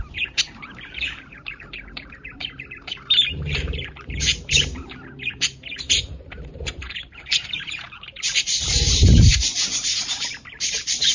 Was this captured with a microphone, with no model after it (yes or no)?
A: no